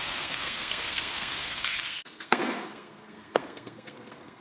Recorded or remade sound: remade